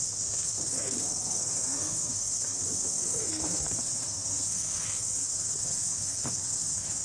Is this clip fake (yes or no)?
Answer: yes